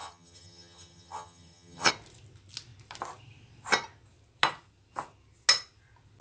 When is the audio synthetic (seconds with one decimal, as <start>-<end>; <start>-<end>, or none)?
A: 0.0-1.9